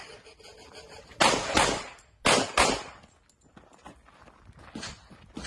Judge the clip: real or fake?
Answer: real